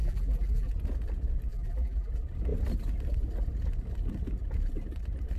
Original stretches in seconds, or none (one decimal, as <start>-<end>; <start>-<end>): 0.7-1.5; 2.1-5.4